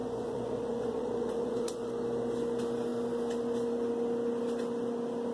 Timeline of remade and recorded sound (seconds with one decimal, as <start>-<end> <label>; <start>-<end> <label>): 0.0-1.9 remade; 1.9-5.3 recorded